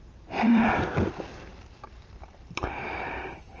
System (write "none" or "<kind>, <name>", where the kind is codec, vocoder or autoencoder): vocoder, BigVGAN v2